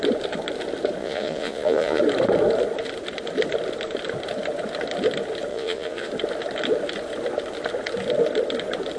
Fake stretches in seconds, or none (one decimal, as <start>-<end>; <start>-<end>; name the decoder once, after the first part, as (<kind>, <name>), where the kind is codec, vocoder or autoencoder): 1.0-2.0 (vocoder, Vocos); 5.5-6.1